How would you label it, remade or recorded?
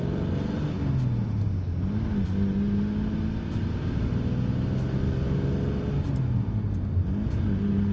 recorded